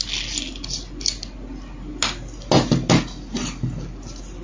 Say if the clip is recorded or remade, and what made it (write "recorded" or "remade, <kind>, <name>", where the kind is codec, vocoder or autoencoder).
recorded